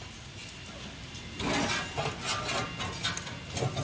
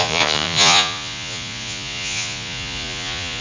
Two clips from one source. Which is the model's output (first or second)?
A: second